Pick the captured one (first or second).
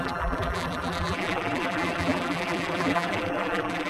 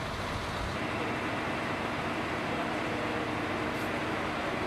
second